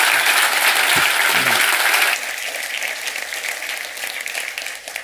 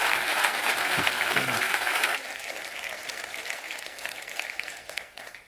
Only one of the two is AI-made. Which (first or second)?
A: second